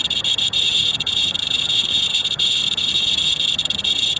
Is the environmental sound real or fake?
fake